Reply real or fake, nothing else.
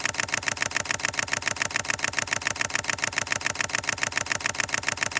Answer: real